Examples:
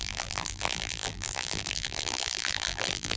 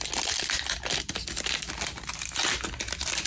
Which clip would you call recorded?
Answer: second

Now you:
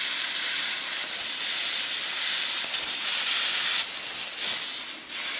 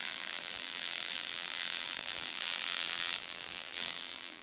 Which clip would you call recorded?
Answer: first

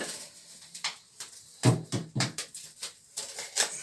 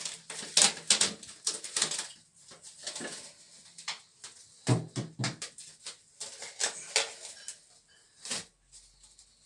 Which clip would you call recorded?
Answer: second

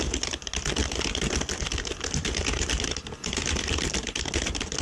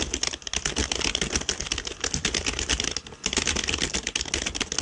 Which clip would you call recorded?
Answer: second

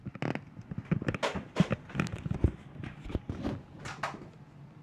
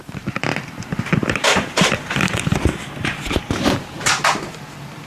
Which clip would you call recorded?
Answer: first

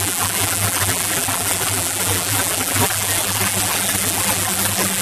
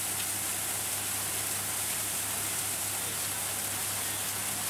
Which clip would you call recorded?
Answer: second